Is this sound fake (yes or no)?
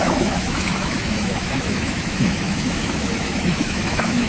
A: yes